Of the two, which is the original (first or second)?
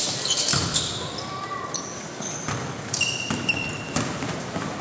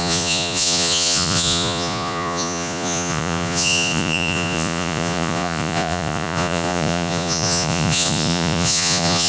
first